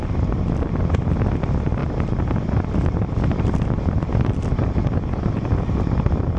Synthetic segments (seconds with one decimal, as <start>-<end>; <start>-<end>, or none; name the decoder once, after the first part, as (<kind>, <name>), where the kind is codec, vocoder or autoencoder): none